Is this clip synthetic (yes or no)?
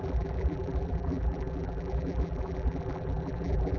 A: yes